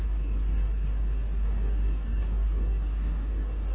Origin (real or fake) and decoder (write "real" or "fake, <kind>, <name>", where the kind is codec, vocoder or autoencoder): fake, codec, DAC